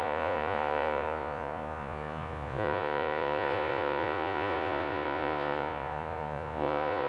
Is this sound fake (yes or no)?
yes